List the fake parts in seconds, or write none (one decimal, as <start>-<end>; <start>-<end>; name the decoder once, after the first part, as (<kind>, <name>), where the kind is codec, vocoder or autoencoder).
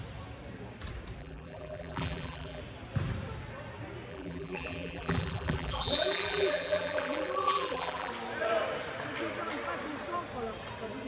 1.2-2.6 (vocoder, BigVGAN v2); 4.1-8.1